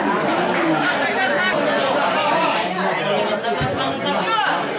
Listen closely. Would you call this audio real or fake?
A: real